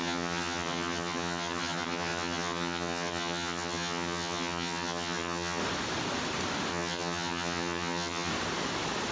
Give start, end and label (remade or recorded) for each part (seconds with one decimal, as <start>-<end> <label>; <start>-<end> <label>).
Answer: 0.0-5.6 remade; 5.6-6.7 recorded; 6.7-8.3 remade; 8.3-9.1 recorded